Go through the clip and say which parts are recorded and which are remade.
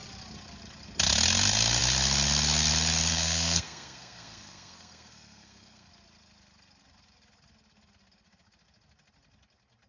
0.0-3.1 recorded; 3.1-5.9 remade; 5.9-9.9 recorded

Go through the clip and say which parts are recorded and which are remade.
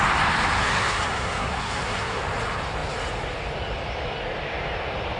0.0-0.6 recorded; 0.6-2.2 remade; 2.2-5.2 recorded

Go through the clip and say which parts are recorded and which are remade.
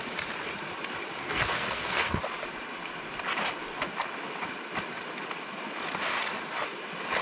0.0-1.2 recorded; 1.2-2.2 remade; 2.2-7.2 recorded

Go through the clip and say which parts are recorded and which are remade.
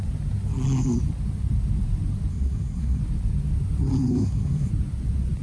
0.0-2.3 recorded; 2.3-3.0 remade; 3.0-4.1 recorded; 4.1-4.7 remade; 4.7-5.4 recorded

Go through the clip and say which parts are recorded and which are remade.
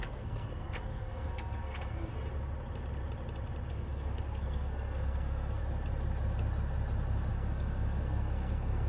0.0-2.1 remade; 2.1-3.7 recorded; 3.7-5.6 remade; 5.6-7.3 recorded; 7.3-8.9 remade